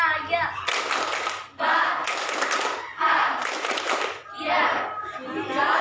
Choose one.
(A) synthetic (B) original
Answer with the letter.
B